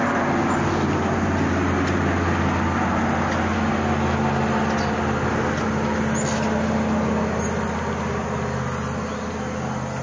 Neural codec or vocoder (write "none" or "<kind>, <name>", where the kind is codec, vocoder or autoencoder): none